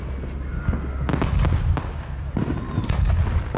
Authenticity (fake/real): real